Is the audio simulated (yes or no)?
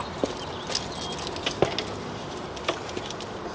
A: no